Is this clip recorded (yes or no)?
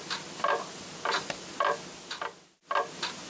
yes